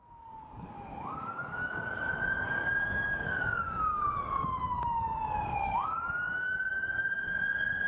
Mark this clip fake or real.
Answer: fake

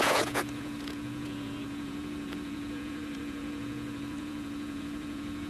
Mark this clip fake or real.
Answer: fake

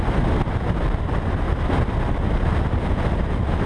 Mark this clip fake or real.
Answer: real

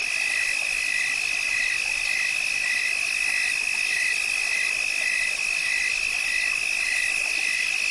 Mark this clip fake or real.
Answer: real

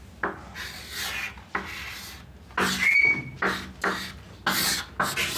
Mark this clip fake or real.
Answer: real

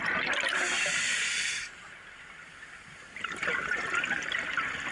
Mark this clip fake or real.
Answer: real